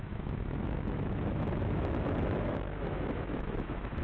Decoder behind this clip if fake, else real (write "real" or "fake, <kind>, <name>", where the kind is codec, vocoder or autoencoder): fake, autoencoder, DAC-VAE